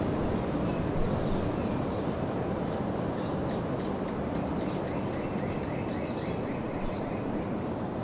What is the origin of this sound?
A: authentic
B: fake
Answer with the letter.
A